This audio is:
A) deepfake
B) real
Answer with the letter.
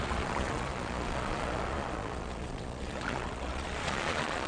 A